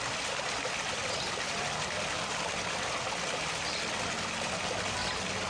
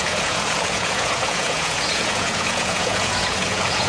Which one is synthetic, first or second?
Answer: second